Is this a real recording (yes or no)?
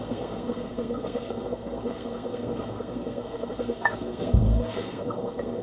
no